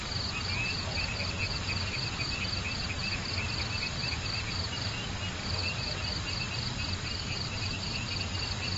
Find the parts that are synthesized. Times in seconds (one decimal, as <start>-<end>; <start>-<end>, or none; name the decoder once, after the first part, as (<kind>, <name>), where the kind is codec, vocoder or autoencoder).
1.5-2.4 (vocoder, BigVGAN v2); 3.0-3.6; 4.0-4.9